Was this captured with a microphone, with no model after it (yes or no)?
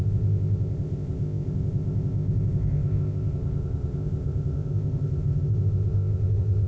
no